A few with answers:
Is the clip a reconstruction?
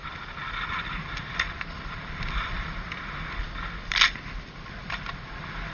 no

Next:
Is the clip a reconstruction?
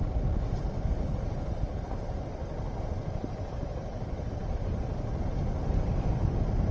no